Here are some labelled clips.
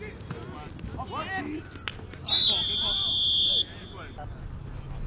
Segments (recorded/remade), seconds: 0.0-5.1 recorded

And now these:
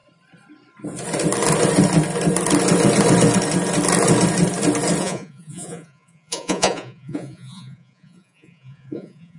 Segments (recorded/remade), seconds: 0.0-5.0 recorded; 5.0-9.4 remade

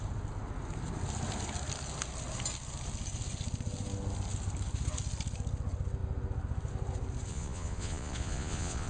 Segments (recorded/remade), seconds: 0.0-7.3 recorded; 7.3-8.9 remade

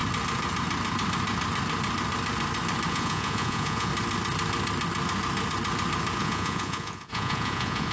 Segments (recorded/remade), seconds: 0.0-2.9 recorded; 2.9-3.9 remade; 3.9-6.2 recorded; 6.2-7.9 remade